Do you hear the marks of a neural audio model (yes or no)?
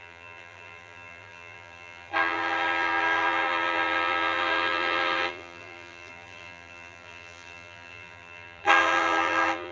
yes